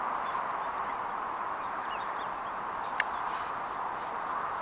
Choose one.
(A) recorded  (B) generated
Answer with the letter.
B